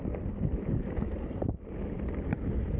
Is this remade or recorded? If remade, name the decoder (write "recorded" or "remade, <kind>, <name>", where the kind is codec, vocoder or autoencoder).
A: recorded